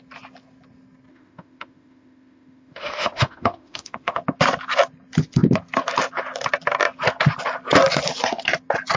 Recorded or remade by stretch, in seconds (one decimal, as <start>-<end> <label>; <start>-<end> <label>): 0.0-1.1 recorded; 1.1-4.2 remade; 4.2-9.0 recorded